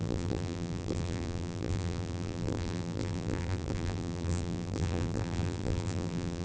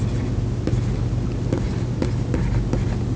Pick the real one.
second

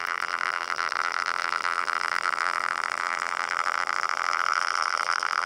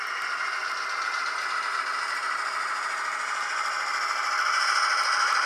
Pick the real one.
second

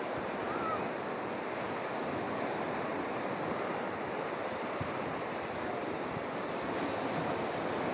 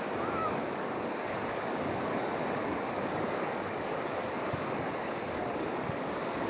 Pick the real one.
first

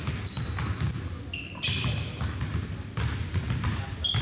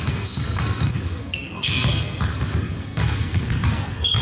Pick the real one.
first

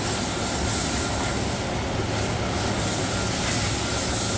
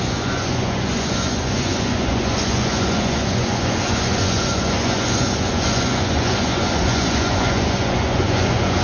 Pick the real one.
first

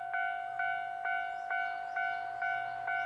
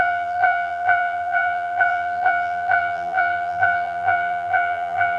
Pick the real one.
first